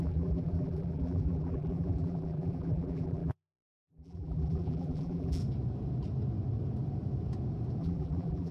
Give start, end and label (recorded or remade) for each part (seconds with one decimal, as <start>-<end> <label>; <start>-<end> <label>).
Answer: 0.0-5.4 remade; 5.4-7.8 recorded; 7.8-8.5 remade